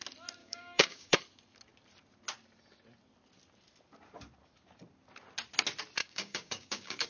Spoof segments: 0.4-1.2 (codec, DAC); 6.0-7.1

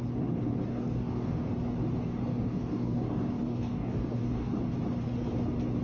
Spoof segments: 0.7-1.5 (codec, DAC); 2.3-4.6

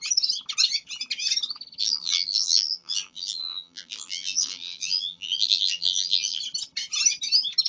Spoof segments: 1.8-6.4 (vocoder, BigVGAN v2)

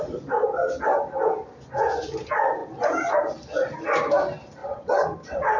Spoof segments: 4.6-5.6 (vocoder, BigVGAN v2)

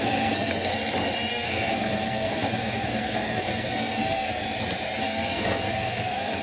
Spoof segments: 0.0-0.7 (codec, SNAC); 1.3-4.3; 5.0-6.4

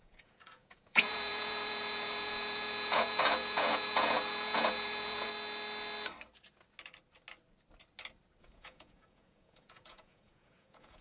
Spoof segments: 0.0-5.3 (vocoder, Vocos); 8.4-11.0

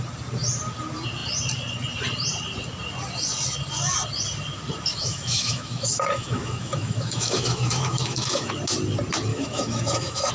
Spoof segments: 4.9-8.5 (autoencoder, DAC-VAE); 9.3-10.3

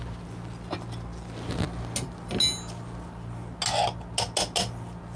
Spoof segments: none